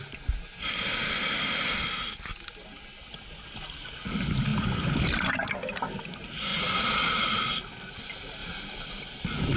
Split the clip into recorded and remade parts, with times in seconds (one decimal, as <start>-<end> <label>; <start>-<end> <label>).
0.0-6.5 recorded; 6.5-7.2 remade; 7.2-9.6 recorded